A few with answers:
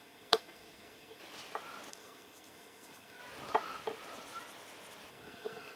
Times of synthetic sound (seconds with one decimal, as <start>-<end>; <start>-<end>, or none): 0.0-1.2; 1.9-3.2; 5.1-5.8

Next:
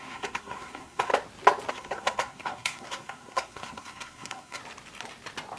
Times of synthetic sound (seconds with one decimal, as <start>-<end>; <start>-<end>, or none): 0.0-1.1; 1.7-4.6

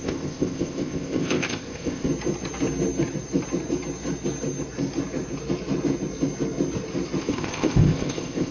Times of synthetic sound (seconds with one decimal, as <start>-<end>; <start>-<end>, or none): 0.0-2.1; 7.2-8.5